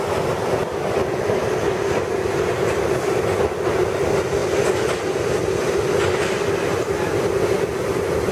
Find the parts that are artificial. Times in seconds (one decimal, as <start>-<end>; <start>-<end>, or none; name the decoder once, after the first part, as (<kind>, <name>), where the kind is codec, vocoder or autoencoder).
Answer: none